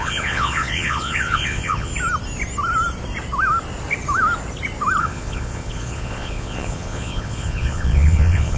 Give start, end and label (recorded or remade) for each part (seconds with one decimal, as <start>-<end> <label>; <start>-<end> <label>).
0.0-1.9 remade; 1.9-5.0 recorded; 5.0-8.6 remade